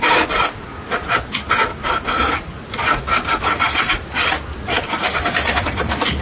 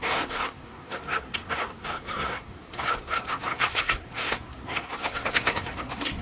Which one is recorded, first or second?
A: first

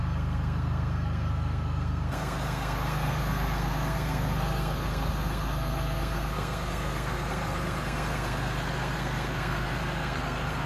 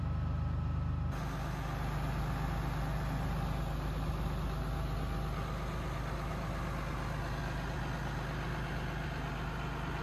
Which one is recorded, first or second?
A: second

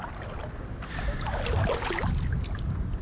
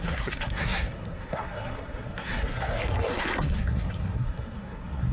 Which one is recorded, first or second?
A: first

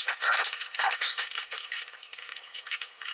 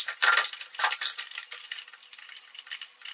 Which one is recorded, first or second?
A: second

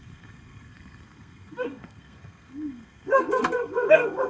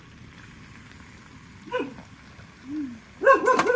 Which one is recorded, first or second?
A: second